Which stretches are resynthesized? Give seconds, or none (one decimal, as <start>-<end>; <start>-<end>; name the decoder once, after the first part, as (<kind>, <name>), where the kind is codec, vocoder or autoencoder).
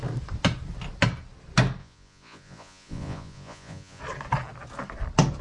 1.8-4.0 (vocoder, Vocos)